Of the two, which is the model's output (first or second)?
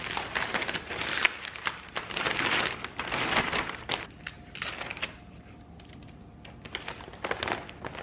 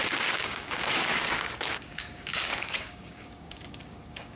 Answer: second